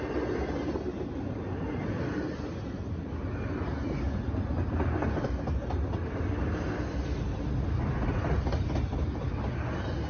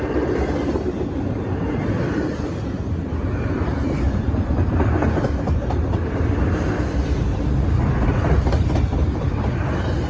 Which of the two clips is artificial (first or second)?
second